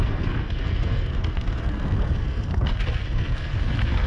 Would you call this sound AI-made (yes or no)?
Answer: yes